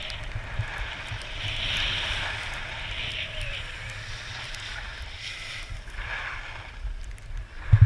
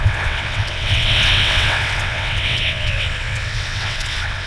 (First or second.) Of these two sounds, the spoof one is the second